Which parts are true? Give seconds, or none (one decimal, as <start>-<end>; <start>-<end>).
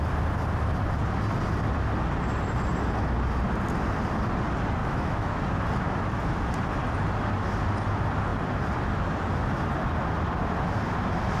0.0-4.8; 5.4-11.4